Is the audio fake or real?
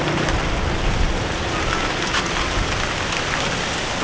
real